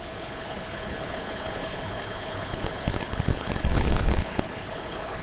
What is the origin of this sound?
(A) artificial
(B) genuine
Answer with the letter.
A